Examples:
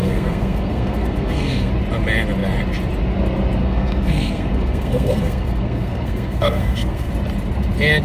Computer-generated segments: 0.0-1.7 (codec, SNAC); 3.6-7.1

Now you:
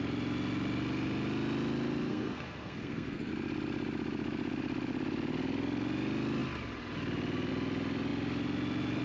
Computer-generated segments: 2.1-3.3 (codec, SNAC)

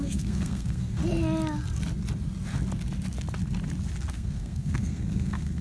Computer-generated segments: 0.0-1.0 (codec, SNAC); 4.1-5.6